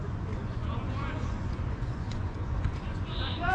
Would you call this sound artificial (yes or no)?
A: yes